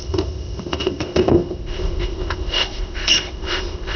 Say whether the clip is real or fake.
fake